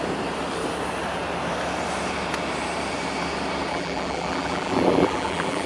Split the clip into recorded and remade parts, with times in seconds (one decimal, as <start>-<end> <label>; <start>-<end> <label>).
0.0-3.7 recorded; 3.7-5.7 remade